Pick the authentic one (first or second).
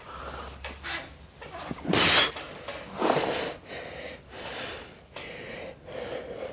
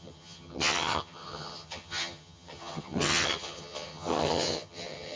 first